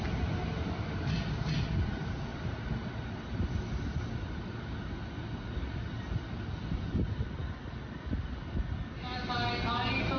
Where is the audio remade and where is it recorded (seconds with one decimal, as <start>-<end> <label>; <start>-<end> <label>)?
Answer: 0.0-10.2 recorded